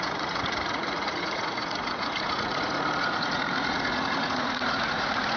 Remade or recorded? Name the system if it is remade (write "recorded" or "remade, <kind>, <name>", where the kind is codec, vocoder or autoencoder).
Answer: remade, vocoder, Vocos